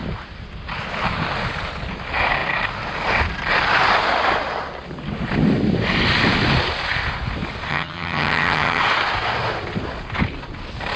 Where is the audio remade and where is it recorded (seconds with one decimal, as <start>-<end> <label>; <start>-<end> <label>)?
0.0-7.7 recorded; 7.7-8.8 remade; 8.8-11.0 recorded